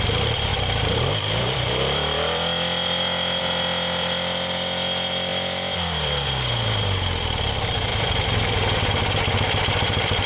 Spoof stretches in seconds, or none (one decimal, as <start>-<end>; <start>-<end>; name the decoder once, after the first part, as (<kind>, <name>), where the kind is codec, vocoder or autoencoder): 0.5-3.4 (vocoder, BigVGAN v2); 5.3-6.5; 7.9-9.0